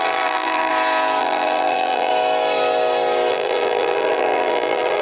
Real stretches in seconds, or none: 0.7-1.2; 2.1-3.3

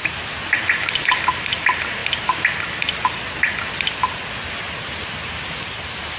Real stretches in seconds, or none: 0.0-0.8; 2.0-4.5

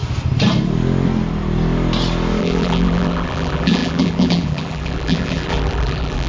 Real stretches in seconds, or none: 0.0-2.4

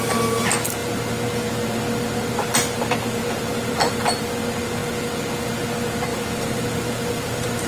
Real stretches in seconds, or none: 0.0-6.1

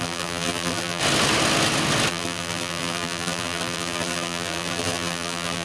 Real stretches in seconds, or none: 1.0-2.1